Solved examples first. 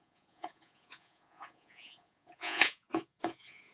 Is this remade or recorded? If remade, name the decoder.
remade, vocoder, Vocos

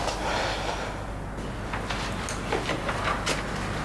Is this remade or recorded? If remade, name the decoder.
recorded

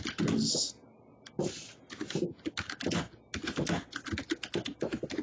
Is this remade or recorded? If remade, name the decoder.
recorded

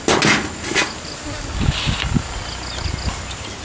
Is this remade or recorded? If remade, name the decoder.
recorded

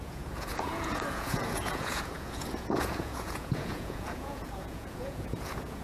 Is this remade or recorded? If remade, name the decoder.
remade, vocoder, Vocos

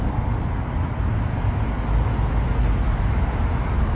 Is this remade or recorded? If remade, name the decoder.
recorded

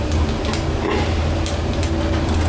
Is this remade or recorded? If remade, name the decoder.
recorded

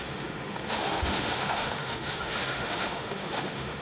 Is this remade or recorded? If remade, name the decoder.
remade, autoencoder, DAC-VAE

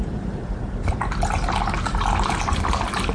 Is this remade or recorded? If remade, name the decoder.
recorded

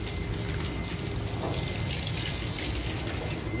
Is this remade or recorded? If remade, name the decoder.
recorded